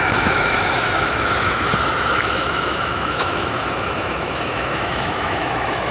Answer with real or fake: fake